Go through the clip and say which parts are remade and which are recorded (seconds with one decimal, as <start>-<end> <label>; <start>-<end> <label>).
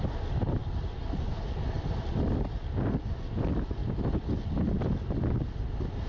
0.0-6.1 recorded